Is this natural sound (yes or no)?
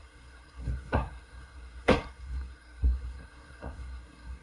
no